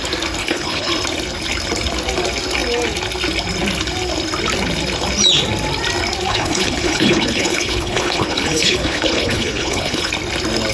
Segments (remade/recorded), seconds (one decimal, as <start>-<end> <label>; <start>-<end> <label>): 0.0-0.4 recorded; 0.4-0.9 remade; 0.9-6.3 recorded; 6.3-10.1 remade; 10.1-10.7 recorded